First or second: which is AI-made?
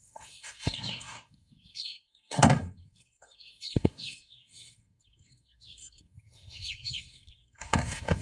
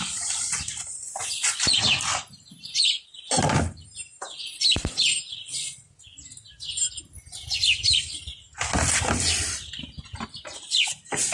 first